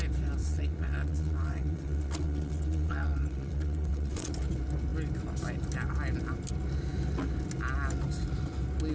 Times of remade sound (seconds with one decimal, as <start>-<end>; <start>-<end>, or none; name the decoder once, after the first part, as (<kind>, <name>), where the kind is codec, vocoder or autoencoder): 0.4-4.3 (vocoder, WaveNeXt)